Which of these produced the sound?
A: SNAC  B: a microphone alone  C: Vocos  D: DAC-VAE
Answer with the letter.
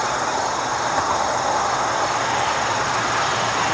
B